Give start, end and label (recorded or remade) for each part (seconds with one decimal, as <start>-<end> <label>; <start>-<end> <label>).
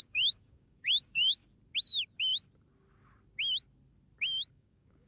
0.0-1.4 remade; 1.4-4.5 recorded; 4.5-5.1 remade